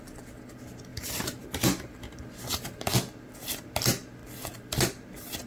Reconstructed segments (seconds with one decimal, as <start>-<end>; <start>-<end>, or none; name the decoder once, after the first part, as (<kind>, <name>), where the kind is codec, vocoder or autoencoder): 0.9-2.3 (vocoder, BigVGAN v2); 4.2-5.5